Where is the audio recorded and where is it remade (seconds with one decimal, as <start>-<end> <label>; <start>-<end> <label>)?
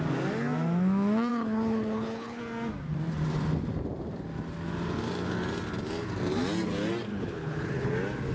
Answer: 0.0-1.3 recorded; 1.3-2.4 remade; 2.4-7.1 recorded; 7.1-7.9 remade; 7.9-8.3 recorded